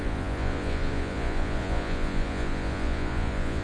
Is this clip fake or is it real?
fake